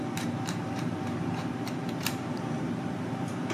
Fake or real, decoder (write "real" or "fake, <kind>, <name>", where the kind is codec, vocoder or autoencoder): fake, vocoder, BigVGAN v2